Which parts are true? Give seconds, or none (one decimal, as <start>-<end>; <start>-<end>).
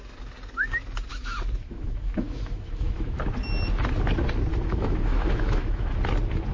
0.0-1.1; 3.2-4.5; 5.9-6.5